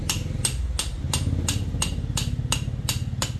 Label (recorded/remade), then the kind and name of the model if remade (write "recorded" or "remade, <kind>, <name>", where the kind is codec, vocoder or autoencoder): recorded